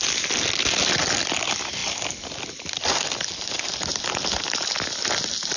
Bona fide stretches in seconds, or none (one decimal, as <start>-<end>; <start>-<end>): 0.0-5.6